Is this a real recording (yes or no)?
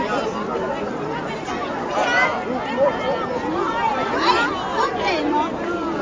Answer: yes